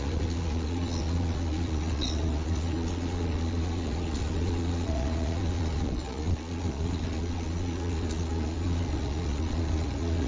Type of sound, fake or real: fake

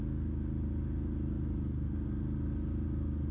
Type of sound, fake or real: real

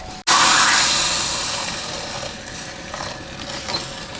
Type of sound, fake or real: real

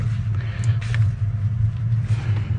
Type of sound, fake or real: real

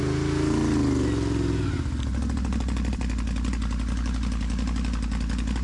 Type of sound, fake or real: real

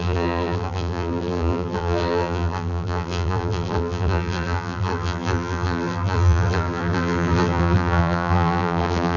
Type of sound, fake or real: fake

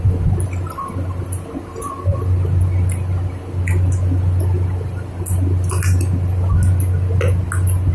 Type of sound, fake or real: real